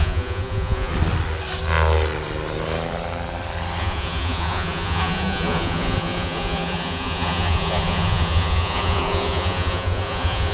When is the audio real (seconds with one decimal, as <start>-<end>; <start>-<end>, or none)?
0.9-3.8